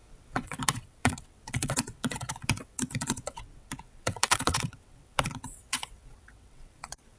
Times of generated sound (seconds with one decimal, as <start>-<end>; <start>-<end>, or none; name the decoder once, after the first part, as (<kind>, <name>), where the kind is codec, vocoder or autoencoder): 0.0-7.2 (vocoder, WaveNeXt)